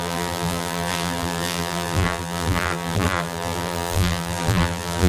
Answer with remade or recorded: remade